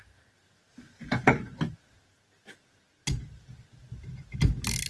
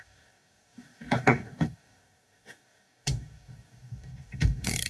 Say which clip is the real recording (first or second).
first